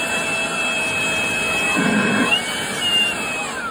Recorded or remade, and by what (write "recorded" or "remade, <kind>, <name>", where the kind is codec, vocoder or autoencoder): recorded